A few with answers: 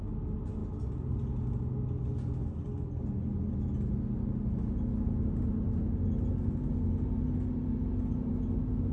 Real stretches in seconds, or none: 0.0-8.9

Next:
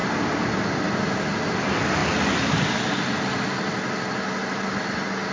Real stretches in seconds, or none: 0.0-5.3